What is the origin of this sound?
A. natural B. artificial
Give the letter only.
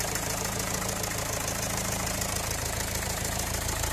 B